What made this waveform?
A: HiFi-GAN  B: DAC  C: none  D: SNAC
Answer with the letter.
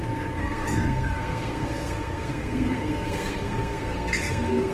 D